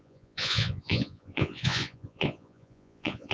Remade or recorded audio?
remade